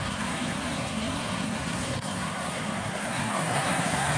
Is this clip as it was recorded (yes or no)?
no